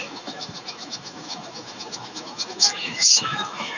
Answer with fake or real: fake